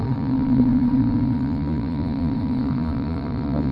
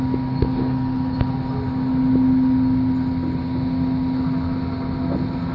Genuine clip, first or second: second